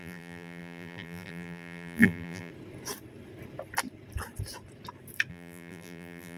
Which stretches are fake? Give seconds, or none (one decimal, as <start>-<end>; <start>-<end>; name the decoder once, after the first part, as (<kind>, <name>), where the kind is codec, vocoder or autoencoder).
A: 0.0-2.5 (vocoder, BigVGAN v2); 5.3-6.4